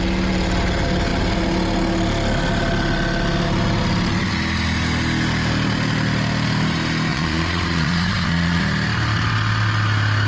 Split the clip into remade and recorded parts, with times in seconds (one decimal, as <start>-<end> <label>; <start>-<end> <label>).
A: 0.0-7.1 recorded; 7.1-8.6 remade; 8.6-10.3 recorded